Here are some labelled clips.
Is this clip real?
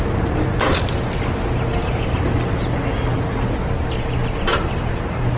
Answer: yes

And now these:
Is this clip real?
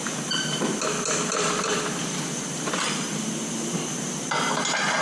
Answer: yes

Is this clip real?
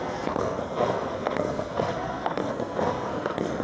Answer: no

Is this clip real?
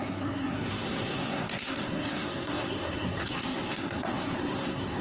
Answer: no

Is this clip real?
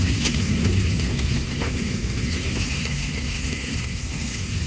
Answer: no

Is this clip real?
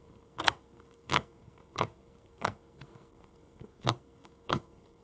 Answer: no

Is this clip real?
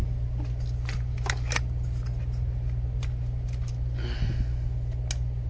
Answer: yes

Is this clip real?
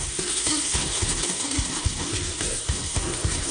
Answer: no